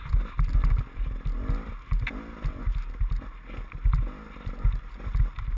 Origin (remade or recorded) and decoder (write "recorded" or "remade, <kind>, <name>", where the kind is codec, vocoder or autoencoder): recorded